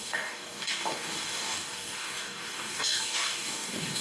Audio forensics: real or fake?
fake